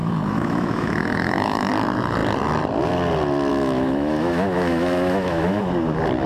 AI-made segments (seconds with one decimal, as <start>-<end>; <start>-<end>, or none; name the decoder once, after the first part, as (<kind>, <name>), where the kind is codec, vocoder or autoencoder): 0.0-1.7 (autoencoder, DAC-VAE); 3.5-5.7